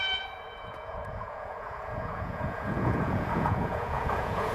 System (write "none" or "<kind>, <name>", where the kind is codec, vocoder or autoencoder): vocoder, Vocos